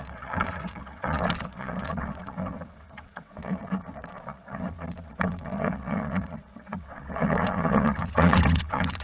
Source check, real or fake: fake